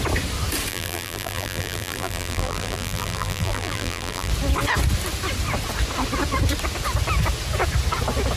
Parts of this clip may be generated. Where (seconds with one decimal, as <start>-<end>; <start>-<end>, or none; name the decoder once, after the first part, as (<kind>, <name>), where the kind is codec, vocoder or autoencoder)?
0.7-4.3 (vocoder, BigVGAN v2)